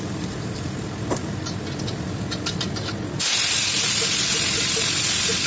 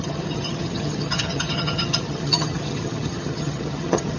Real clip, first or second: first